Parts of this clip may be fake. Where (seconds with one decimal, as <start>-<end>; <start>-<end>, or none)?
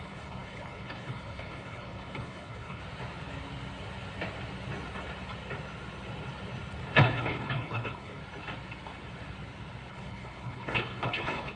0.0-2.8; 7.0-8.2; 9.9-11.6